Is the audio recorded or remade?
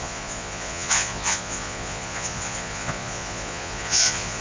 remade